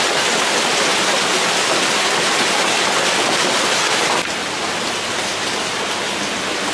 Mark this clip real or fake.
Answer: real